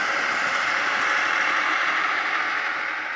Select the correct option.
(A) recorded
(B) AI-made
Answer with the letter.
B